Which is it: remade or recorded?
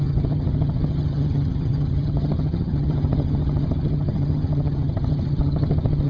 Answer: remade